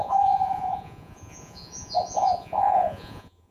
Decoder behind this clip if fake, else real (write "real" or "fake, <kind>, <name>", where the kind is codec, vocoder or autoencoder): fake, vocoder, Vocos